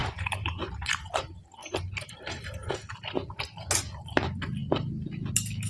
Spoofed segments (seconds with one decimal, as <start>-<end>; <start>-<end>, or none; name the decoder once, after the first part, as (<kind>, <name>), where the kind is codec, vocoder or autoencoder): 0.0-0.9 (vocoder, BigVGAN v2); 1.6-2.7